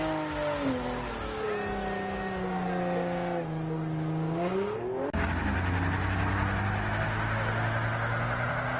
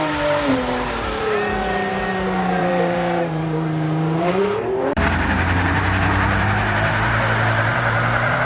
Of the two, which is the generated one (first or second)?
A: second